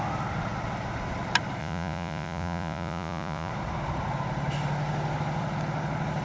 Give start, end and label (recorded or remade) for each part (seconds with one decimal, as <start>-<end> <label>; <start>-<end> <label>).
0.0-1.6 recorded; 1.6-3.5 remade; 3.5-6.2 recorded